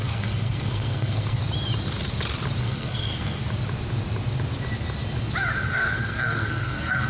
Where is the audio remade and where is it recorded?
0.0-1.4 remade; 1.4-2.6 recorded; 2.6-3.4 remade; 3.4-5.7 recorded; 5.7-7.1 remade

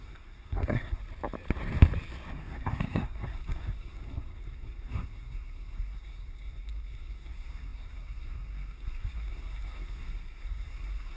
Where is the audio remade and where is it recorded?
0.0-1.0 remade; 1.0-2.3 recorded; 2.3-11.2 remade

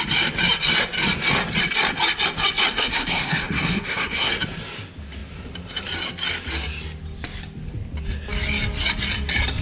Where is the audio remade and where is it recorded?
0.0-2.7 recorded; 2.7-4.3 remade; 4.3-9.6 recorded

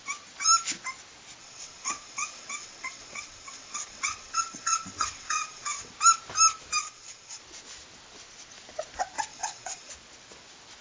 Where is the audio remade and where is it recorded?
0.0-1.4 recorded; 1.4-5.9 remade; 5.9-6.8 recorded; 6.8-7.4 remade; 7.4-9.3 recorded; 9.3-9.9 remade; 9.9-10.8 recorded